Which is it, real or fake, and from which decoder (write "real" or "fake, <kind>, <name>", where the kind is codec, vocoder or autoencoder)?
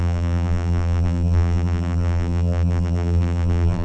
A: fake, vocoder, BigVGAN v2